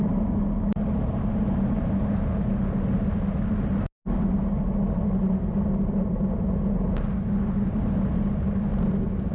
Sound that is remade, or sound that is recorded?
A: recorded